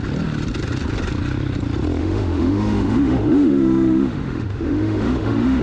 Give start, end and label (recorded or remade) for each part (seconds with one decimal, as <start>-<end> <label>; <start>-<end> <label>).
0.0-2.0 recorded; 2.0-5.6 remade